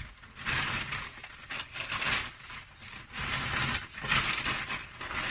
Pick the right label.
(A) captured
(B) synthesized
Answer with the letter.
A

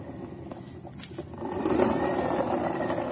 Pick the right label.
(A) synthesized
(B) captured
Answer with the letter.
B